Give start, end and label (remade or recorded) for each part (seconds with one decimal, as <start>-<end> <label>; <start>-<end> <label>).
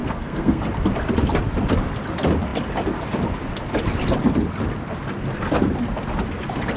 0.0-0.6 remade; 0.6-6.8 recorded